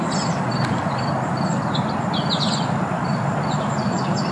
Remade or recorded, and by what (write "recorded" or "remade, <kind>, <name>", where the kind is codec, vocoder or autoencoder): recorded